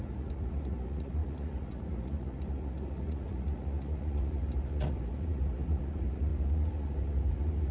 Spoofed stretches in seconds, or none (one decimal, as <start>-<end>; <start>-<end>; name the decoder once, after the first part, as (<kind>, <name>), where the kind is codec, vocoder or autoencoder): 0.0-7.7 (vocoder, Vocos)